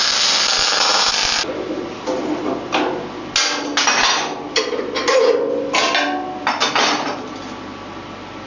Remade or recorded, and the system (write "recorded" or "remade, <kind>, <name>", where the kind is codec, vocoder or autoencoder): recorded